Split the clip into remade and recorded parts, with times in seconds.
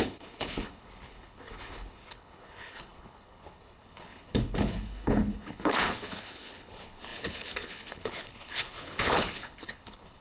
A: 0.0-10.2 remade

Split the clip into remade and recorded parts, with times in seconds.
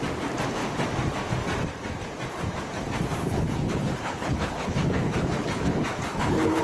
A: 0.0-3.2 recorded; 3.2-6.6 remade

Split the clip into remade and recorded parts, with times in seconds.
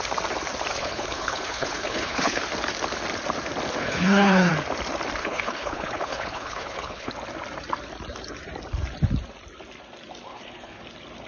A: 0.0-0.7 recorded; 0.7-2.4 remade; 2.4-3.8 recorded; 3.8-4.5 remade; 4.5-5.2 recorded; 5.2-7.1 remade; 7.1-10.3 recorded; 10.3-10.8 remade; 10.8-11.3 recorded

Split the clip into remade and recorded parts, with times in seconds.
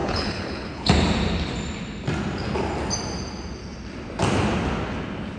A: 0.0-0.9 remade; 0.9-5.4 recorded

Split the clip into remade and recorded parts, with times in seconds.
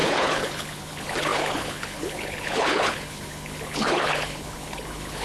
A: 0.0-5.2 remade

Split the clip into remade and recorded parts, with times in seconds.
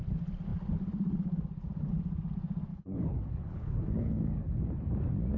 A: 0.0-2.7 recorded; 2.7-4.9 remade; 4.9-5.4 recorded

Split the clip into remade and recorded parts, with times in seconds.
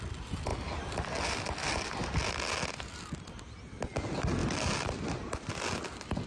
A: 0.0-6.3 recorded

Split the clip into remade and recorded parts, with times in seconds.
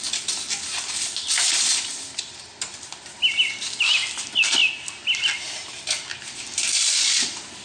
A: 0.0-7.6 recorded